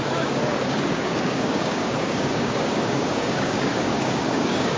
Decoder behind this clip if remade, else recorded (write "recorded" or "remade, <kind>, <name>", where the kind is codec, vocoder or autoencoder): remade, codec, DAC